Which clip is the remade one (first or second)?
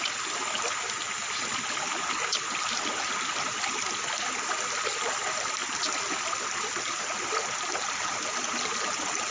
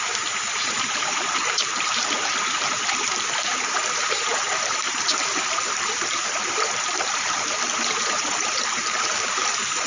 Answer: second